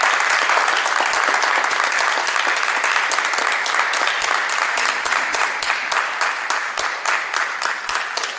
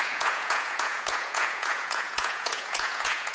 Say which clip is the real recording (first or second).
first